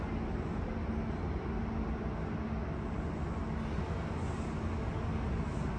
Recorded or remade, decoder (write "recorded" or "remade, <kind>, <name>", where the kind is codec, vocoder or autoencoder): recorded